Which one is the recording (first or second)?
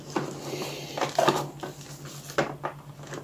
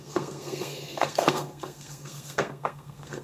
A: first